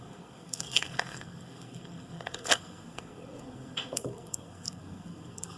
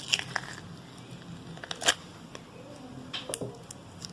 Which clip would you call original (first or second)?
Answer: second